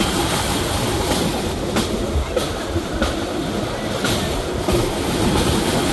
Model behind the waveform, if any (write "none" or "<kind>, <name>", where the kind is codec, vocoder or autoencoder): none